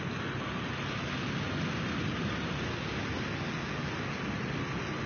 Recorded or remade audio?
recorded